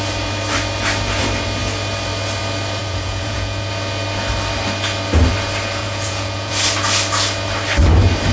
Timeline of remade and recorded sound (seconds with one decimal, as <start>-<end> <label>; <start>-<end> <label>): 0.0-2.8 recorded; 2.8-3.7 remade; 3.7-5.8 recorded; 5.8-6.5 remade; 6.5-8.3 recorded